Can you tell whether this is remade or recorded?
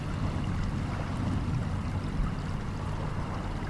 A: recorded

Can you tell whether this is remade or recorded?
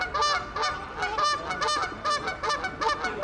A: recorded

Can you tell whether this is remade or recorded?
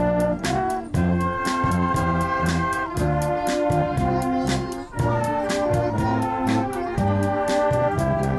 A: recorded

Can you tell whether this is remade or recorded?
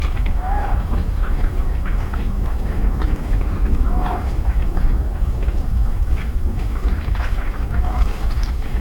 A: remade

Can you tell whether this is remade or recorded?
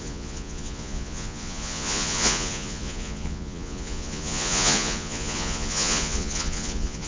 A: remade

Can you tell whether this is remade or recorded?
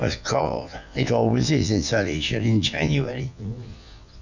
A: remade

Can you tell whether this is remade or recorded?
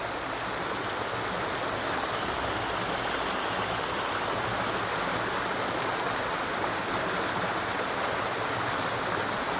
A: recorded